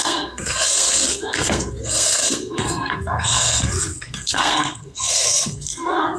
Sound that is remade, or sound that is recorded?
remade